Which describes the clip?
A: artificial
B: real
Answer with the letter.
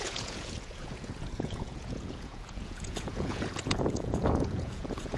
A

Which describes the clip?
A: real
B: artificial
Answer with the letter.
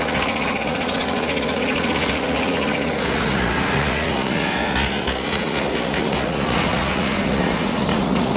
B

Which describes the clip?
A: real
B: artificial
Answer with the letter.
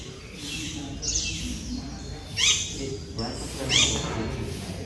A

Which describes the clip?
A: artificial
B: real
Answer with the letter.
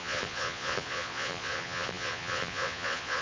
A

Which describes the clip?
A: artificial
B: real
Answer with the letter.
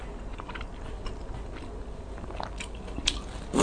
B